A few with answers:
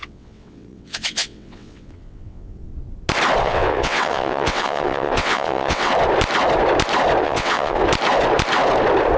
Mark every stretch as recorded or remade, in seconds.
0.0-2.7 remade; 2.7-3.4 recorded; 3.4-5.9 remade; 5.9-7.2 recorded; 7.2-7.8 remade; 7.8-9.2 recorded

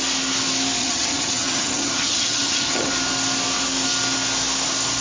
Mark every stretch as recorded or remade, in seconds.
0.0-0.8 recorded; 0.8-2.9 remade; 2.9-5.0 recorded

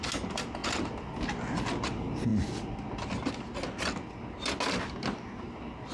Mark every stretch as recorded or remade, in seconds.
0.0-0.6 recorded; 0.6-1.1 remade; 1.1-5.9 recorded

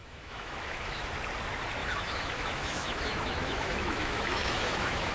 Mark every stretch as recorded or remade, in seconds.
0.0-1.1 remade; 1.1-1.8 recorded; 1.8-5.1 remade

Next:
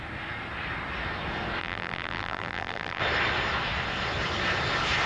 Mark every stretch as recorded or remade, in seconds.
0.0-1.6 recorded; 1.6-3.0 remade; 3.0-5.1 recorded